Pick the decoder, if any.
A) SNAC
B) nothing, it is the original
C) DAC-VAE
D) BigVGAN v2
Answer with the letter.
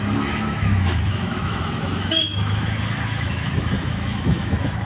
C